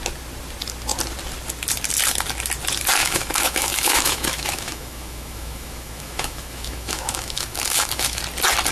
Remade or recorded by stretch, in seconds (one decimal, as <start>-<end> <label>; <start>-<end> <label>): 0.0-3.0 recorded; 3.0-8.2 remade; 8.2-8.7 recorded